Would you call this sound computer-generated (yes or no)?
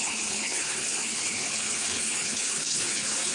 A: yes